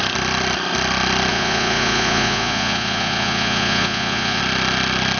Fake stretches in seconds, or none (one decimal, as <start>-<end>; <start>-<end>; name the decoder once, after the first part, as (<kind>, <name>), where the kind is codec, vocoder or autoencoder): 1.3-4.4 (vocoder, Vocos)